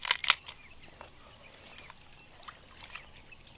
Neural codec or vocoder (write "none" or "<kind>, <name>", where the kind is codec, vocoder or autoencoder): none